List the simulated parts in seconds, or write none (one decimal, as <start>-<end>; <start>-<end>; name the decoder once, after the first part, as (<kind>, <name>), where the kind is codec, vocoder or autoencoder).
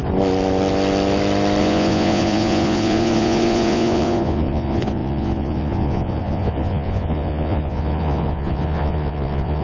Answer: 1.6-9.6 (vocoder, Vocos)